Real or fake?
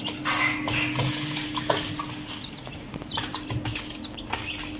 real